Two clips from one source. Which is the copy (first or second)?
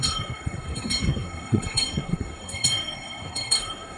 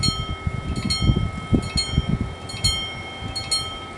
first